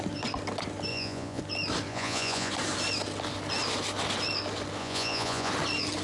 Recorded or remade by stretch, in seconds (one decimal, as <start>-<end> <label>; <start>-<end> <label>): 0.0-0.9 recorded; 0.9-1.4 remade; 1.4-1.9 recorded; 1.9-2.5 remade; 2.5-4.8 recorded; 4.8-5.5 remade; 5.5-6.0 recorded